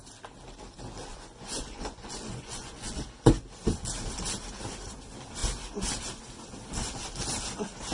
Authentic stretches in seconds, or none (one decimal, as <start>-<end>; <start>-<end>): 0.0-1.1; 3.0-7.9